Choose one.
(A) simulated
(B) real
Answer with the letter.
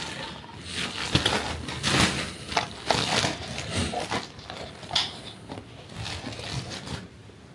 B